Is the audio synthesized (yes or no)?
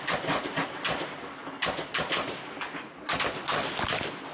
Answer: no